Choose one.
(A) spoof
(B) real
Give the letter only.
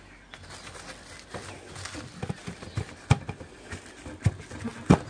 B